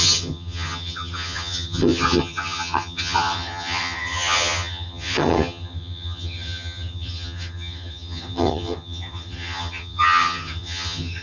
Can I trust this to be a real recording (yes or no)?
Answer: no